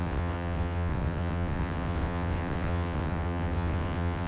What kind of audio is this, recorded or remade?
remade